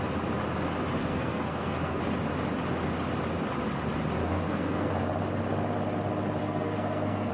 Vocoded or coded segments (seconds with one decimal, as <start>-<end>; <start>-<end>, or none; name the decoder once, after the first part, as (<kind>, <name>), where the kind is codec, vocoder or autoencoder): 1.0-2.0 (codec, SNAC); 4.2-4.9; 6.4-7.3